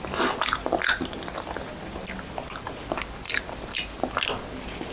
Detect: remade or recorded recorded